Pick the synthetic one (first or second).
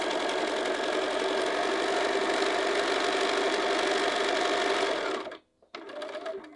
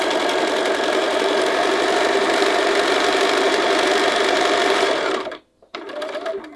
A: second